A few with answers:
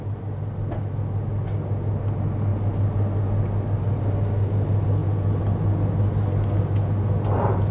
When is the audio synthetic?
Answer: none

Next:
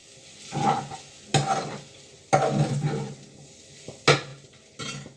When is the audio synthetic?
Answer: none

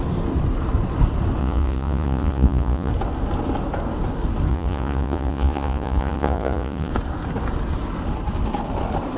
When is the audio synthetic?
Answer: 1.4-2.9; 4.5-6.9

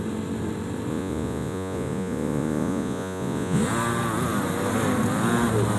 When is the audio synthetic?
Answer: 0.9-3.6

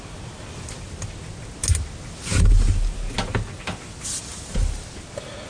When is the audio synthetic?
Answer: none

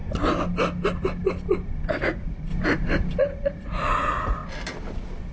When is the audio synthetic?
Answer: 2.0-2.5; 3.2-4.4

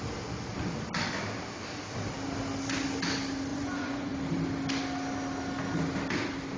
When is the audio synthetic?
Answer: 3.5-4.1